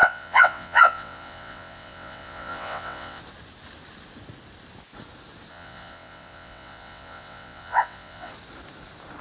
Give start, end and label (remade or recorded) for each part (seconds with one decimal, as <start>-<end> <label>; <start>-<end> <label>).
0.0-3.2 remade; 3.2-5.5 recorded; 5.5-8.3 remade; 8.3-9.2 recorded